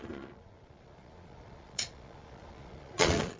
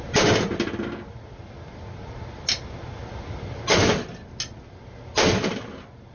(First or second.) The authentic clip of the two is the second